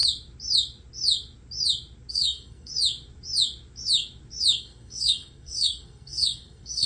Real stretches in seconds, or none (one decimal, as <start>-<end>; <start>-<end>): 0.0-2.1; 2.7-4.6

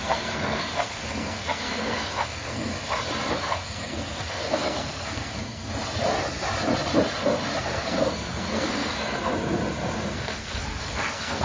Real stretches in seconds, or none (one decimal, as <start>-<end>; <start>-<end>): 2.7-3.3; 5.7-7.6; 9.3-10.1

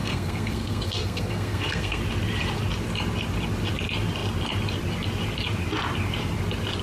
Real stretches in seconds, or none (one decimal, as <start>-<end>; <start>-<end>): 2.0-6.8

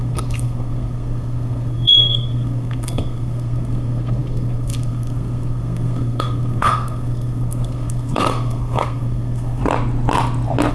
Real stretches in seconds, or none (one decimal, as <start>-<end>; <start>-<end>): 9.6-10.7